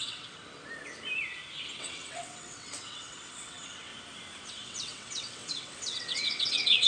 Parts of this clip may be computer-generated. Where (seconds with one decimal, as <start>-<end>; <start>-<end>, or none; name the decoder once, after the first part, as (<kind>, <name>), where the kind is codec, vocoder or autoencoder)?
0.0-0.4 (vocoder, WaveNeXt); 1.8-3.9; 4.5-6.9